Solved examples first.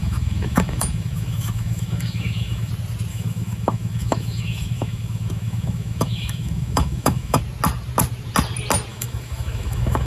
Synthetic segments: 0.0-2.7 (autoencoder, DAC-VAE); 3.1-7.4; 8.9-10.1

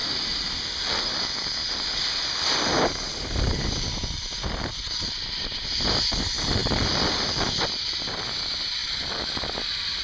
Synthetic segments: 1.6-3.8 (vocoder, BigVGAN v2); 8.8-10.0